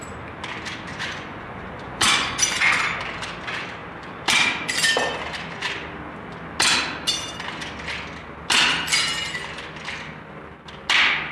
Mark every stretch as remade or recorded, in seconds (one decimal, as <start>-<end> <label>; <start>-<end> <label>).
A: 0.0-0.9 recorded; 0.9-2.8 remade; 2.8-11.3 recorded